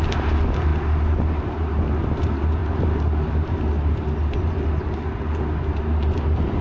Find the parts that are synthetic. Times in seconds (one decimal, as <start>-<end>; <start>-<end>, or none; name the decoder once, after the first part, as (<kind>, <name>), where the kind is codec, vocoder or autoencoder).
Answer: none